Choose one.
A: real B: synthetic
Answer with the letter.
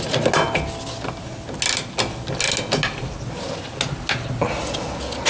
A